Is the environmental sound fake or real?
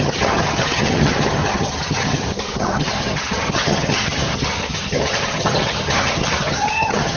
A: fake